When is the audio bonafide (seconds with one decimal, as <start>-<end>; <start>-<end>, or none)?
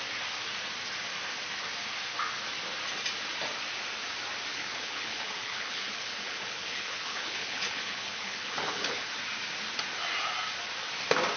0.0-4.5; 9.1-11.4